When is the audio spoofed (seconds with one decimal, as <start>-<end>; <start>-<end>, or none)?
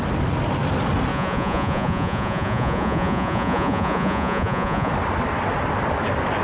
1.1-4.9